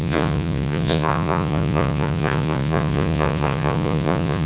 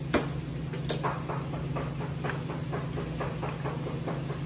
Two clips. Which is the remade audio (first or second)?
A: first